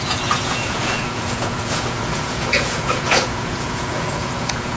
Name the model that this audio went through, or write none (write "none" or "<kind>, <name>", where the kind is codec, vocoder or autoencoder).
vocoder, Vocos